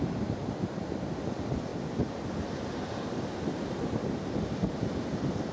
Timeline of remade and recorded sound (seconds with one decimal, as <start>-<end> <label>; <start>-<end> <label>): 0.0-5.5 recorded